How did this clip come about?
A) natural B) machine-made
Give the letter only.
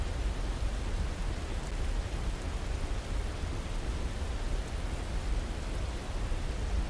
A